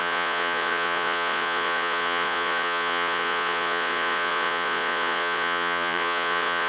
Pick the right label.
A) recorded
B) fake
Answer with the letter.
B